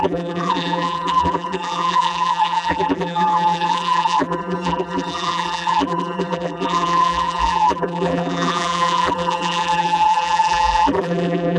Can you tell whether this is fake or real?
fake